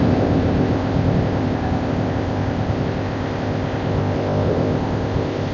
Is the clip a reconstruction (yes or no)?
yes